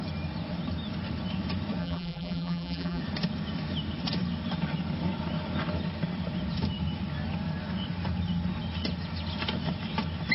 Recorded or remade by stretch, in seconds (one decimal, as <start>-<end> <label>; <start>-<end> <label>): 0.0-1.8 recorded; 1.8-3.0 remade; 3.0-10.3 recorded